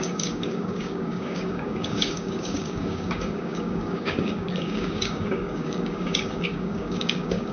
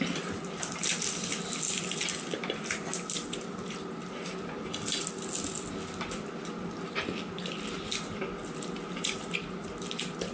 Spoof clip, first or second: first